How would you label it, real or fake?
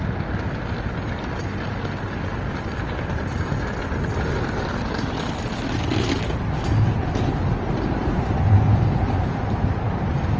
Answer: real